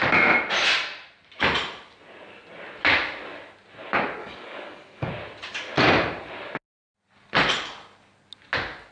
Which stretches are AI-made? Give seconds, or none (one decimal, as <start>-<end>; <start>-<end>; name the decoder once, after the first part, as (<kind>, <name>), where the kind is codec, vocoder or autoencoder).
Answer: 4.2-5.1 (codec, DAC)